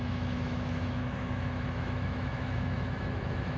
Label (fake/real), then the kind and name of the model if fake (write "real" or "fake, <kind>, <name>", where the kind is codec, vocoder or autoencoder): fake, autoencoder, DAC-VAE